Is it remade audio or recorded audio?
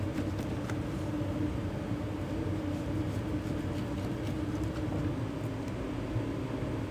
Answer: recorded